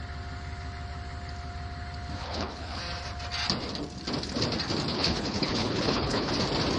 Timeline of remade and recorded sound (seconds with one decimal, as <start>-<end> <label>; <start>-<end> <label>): 0.0-2.2 recorded; 2.2-2.8 remade; 2.8-4.9 recorded; 4.9-6.3 remade; 6.3-6.8 recorded